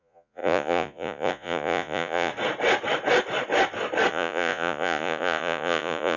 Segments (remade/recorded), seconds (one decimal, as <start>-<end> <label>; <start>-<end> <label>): 0.0-2.3 remade; 2.3-4.1 recorded; 4.1-6.2 remade